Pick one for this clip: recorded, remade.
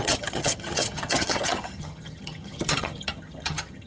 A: remade